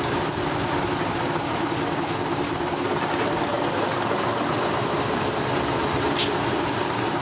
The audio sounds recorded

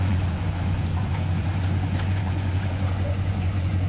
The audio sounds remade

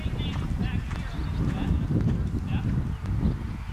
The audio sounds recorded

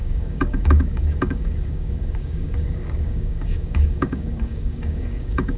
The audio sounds remade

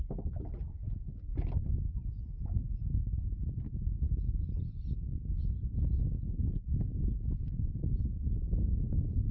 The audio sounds recorded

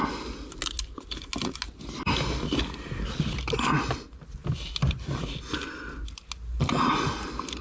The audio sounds recorded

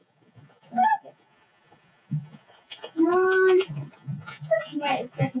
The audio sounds remade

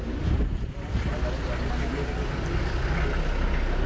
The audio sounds recorded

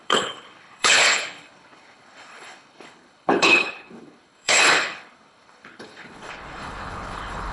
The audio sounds remade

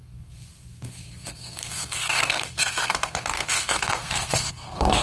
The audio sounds remade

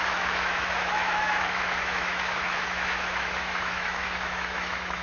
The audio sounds remade